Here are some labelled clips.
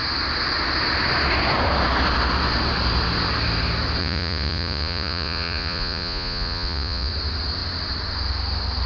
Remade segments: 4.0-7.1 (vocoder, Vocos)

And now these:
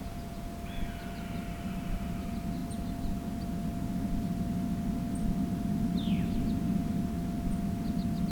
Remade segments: 0.0-0.5 (vocoder, Vocos)

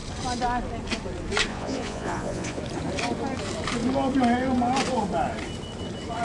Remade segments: 1.5-2.6 (vocoder, Vocos)